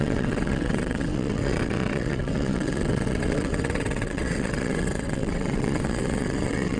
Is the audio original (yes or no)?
no